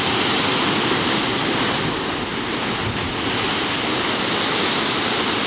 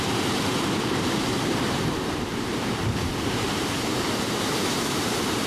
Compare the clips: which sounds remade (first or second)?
second